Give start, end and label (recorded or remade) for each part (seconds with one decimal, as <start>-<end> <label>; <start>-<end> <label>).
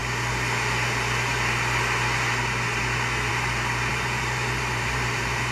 0.0-3.9 recorded; 3.9-5.5 remade